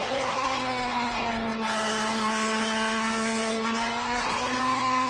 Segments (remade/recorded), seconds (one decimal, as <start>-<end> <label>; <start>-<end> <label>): 0.0-5.1 remade